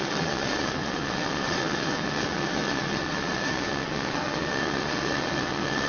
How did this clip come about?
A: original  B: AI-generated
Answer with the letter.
B